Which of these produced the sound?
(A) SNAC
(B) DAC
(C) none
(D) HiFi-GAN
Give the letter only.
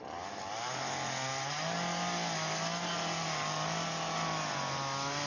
C